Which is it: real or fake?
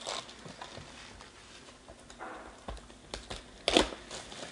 real